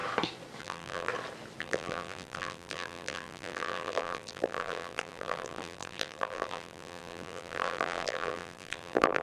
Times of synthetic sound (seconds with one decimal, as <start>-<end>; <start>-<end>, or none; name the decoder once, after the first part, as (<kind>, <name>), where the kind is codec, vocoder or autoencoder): 0.6-1.1 (vocoder, BigVGAN v2); 1.6-9.2

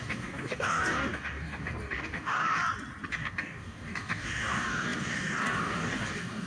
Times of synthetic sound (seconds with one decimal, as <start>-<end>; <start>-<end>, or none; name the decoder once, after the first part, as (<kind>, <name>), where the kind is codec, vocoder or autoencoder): 0.0-2.6 (codec, DAC); 3.1-6.5

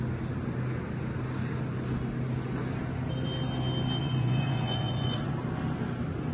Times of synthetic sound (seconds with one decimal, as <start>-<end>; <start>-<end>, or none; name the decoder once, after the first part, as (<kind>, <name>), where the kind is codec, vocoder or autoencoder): 4.0-5.3 (vocoder, Vocos)

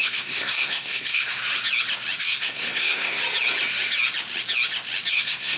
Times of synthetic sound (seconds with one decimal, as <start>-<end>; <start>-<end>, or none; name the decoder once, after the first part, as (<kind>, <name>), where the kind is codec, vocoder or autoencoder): 0.0-1.4 (codec, SNAC); 2.2-3.2; 5.1-5.6